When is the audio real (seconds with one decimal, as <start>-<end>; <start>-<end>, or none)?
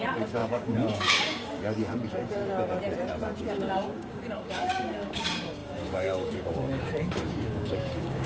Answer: 2.4-3.4